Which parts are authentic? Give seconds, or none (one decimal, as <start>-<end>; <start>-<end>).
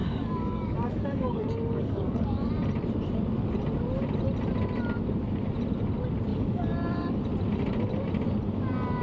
2.5-6.3; 7.2-9.0